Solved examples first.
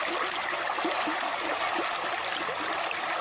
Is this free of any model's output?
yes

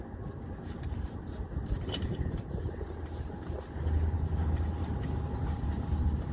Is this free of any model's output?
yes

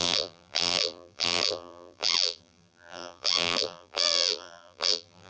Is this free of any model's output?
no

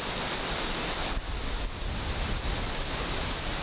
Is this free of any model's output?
yes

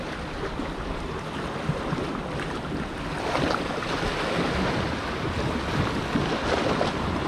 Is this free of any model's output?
yes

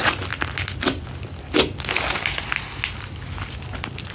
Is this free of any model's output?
yes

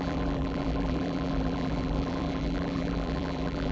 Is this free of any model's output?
no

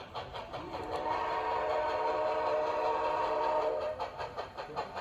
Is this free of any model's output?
no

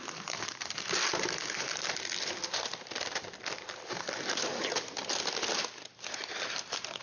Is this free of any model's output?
no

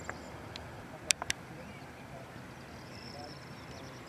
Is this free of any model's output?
no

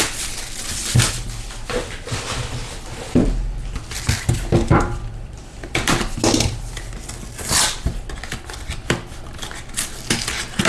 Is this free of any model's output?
yes